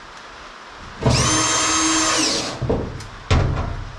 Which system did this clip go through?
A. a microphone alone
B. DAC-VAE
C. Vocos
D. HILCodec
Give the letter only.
A